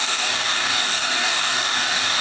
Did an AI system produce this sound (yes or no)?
yes